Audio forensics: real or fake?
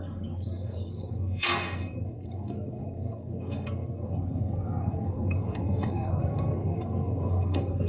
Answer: fake